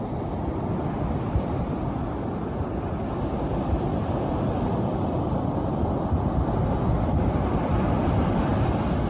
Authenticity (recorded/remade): recorded